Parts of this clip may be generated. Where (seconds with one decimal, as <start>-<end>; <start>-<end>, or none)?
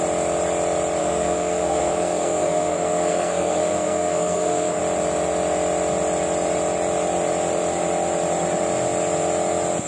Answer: 1.0-4.8